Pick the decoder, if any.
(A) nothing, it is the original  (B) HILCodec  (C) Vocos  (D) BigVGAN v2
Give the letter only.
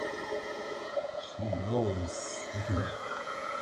C